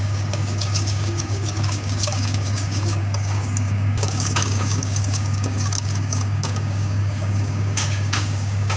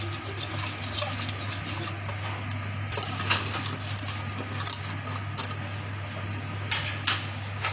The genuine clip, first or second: second